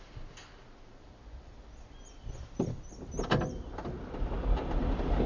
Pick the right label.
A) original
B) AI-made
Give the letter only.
A